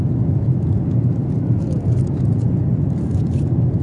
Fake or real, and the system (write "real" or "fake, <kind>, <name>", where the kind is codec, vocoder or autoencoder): real